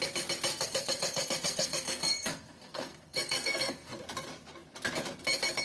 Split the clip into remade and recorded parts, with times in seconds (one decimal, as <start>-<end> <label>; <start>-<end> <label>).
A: 0.0-0.5 recorded; 0.5-3.9 remade; 3.9-5.6 recorded